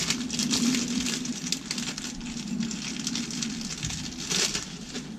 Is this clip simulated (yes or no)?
no